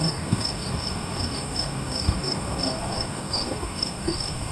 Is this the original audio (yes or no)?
no